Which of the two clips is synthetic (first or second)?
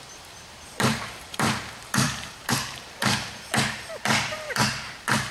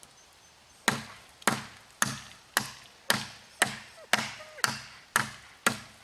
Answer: first